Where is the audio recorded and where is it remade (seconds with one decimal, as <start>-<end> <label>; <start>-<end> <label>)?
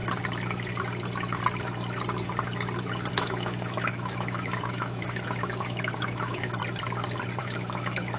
0.0-3.1 recorded; 3.1-6.6 remade; 6.6-7.4 recorded; 7.4-8.2 remade